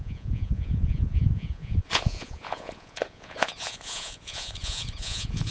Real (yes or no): no